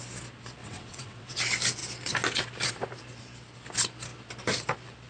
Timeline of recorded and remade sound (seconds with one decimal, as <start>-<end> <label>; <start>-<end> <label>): 0.0-0.6 recorded; 0.6-1.4 remade; 1.4-5.1 recorded